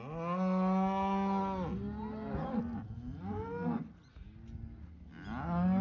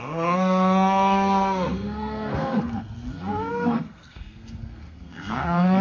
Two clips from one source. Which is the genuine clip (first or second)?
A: first